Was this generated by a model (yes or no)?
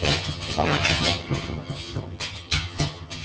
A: yes